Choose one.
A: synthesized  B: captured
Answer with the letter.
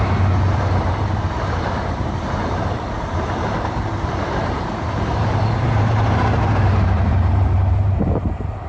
A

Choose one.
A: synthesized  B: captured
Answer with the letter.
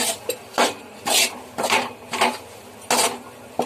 B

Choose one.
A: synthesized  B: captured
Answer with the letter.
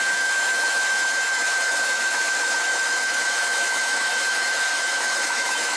A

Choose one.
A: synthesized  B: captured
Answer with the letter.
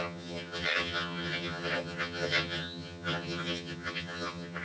A